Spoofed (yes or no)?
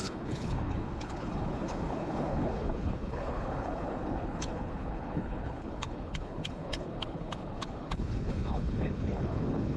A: yes